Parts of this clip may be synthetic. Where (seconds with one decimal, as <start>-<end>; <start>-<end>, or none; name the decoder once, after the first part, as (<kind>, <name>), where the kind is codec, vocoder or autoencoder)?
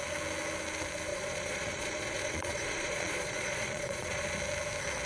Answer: 1.1-4.2 (vocoder, Vocos)